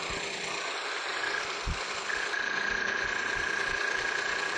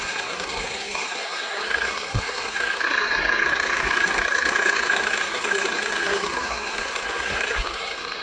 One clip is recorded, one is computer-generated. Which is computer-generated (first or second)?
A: second